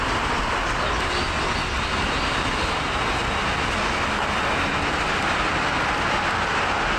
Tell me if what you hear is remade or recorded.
recorded